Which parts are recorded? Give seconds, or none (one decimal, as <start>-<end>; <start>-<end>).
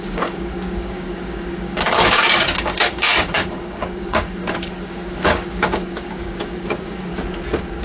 7.1-7.8